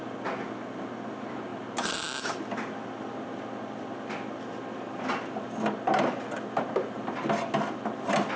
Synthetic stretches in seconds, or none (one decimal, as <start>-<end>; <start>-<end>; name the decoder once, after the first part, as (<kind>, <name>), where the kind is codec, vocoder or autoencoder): none